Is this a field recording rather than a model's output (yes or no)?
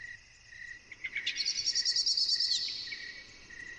yes